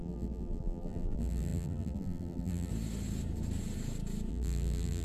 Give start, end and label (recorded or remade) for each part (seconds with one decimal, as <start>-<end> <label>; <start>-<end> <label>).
0.0-2.7 remade; 2.7-4.3 recorded; 4.3-5.0 remade